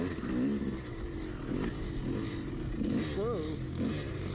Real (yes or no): yes